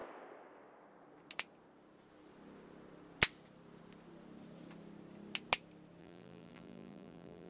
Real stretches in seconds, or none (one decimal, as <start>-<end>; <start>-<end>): 0.0-6.0